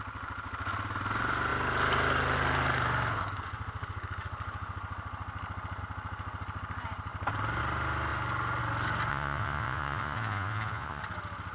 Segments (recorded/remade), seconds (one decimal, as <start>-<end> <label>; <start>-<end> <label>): 0.0-9.1 recorded; 9.1-11.0 remade; 11.0-11.5 recorded